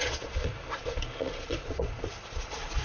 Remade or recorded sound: remade